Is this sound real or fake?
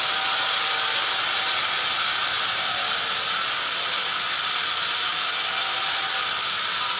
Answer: real